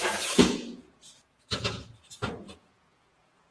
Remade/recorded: remade